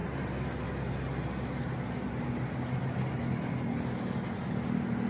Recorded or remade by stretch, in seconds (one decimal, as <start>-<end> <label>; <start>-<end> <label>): 0.0-5.1 recorded